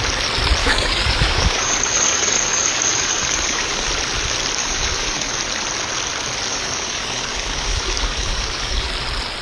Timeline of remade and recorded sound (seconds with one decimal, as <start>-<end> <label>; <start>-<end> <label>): 0.0-0.6 recorded; 0.6-3.9 remade; 3.9-4.6 recorded; 4.6-5.4 remade; 5.4-6.5 recorded; 6.5-8.9 remade; 8.9-9.4 recorded